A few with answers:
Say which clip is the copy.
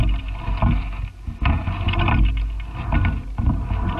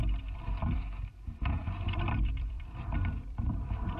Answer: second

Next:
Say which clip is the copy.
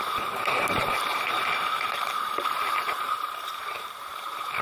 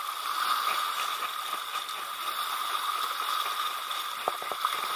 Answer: first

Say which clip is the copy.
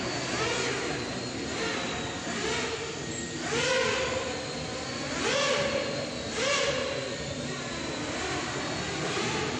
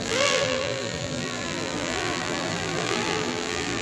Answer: second